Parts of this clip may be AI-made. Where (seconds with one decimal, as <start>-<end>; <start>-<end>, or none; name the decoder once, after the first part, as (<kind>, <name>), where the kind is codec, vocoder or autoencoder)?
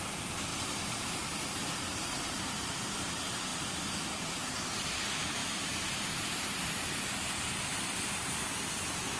0.5-1.0 (vocoder, BigVGAN v2); 5.4-7.1